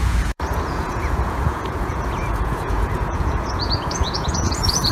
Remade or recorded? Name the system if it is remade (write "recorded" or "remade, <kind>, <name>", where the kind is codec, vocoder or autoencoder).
remade, vocoder, Vocos